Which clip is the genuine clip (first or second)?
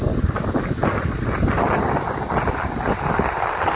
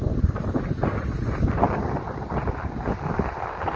first